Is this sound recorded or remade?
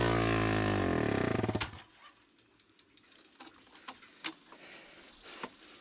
recorded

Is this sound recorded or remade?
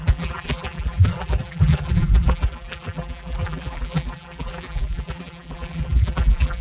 remade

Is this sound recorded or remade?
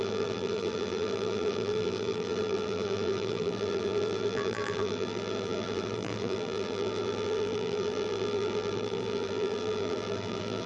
remade